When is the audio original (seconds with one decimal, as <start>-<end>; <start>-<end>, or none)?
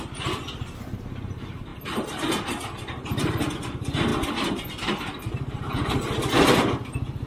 0.0-1.7; 2.5-2.9; 3.5-4.1